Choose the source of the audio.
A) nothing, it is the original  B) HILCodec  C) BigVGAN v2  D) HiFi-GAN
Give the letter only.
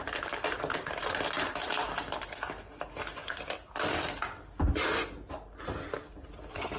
A